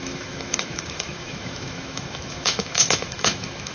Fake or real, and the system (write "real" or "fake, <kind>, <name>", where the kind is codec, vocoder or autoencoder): fake, autoencoder, DAC-VAE